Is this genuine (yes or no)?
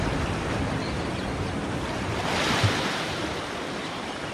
no